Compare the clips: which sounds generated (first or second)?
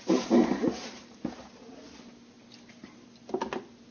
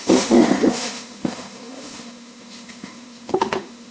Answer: second